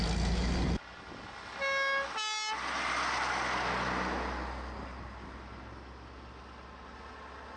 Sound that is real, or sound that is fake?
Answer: real